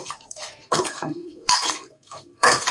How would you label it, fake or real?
fake